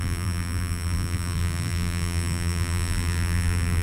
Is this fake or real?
fake